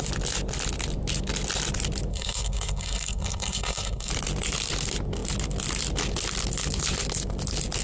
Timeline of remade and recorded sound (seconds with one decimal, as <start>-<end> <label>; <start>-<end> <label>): 0.0-2.1 recorded; 2.1-4.1 remade; 4.1-7.8 recorded